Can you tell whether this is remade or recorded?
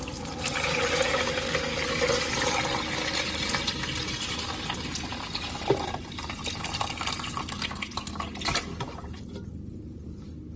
recorded